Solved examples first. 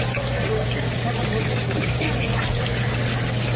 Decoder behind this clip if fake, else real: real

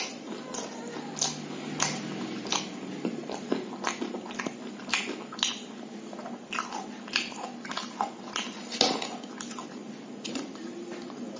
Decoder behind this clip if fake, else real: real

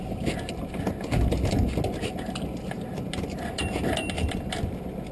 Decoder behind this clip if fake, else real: real